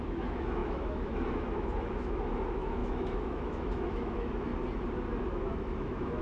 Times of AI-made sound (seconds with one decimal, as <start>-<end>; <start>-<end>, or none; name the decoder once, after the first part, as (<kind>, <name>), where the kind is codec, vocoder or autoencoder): 0.0-4.5 (autoencoder, DAC-VAE); 5.3-6.2